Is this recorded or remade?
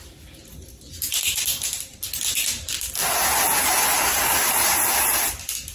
recorded